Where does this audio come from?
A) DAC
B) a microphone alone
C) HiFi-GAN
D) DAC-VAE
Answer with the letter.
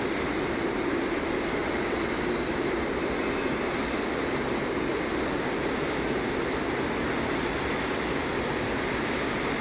B